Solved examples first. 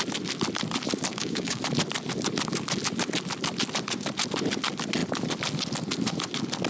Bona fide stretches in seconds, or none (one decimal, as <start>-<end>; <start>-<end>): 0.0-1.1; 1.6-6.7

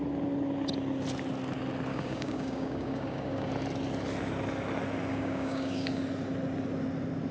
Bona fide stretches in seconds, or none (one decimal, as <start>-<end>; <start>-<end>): 0.0-1.9; 3.5-5.1; 6.0-7.3

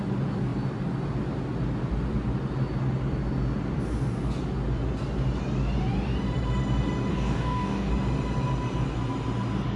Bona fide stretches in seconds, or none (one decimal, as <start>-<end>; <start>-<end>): 0.0-7.1; 7.9-9.8